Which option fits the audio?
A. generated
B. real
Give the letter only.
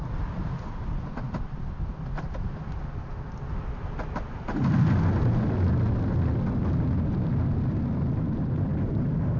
B